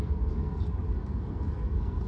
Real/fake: fake